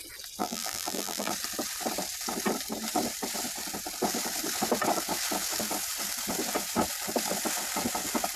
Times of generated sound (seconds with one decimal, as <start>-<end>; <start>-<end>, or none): 0.4-1.3